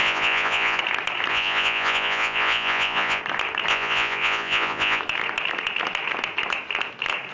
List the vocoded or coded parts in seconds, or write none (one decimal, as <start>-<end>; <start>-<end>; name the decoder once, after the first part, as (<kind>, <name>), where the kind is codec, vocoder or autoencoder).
0.0-0.8 (vocoder, Vocos); 1.3-3.2; 3.7-5.0